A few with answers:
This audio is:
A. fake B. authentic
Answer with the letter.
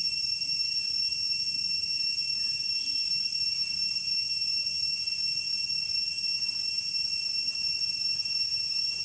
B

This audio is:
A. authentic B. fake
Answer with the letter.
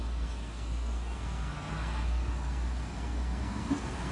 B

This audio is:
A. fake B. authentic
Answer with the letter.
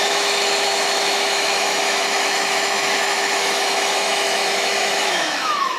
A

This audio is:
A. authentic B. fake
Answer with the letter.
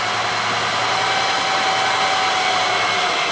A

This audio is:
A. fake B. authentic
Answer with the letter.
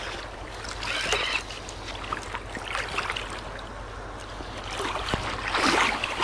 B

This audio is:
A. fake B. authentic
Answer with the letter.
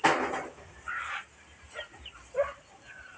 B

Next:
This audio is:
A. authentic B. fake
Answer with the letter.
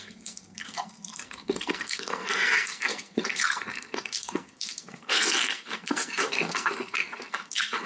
B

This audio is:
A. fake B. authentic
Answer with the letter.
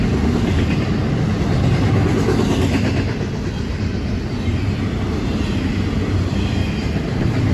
B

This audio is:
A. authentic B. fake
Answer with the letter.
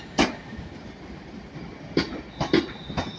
A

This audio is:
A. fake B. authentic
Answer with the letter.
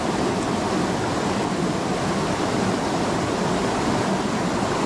B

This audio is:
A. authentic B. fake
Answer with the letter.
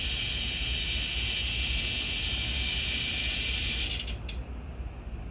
A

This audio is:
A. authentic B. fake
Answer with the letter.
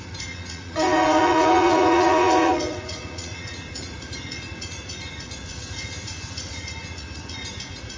B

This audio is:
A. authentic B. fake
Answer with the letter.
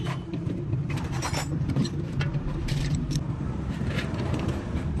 B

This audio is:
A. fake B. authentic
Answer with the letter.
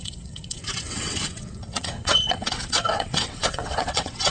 A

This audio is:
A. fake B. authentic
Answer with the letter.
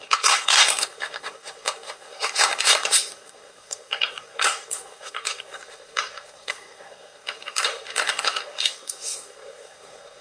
A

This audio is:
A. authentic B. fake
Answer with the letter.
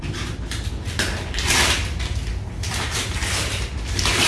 A